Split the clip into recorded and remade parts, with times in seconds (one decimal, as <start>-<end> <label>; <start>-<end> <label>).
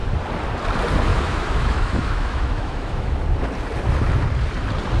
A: 0.0-1.1 recorded; 1.1-3.2 remade; 3.2-5.0 recorded